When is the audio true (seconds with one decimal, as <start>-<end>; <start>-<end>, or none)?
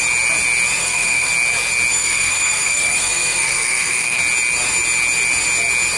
0.0-0.8; 1.3-1.9; 4.2-6.0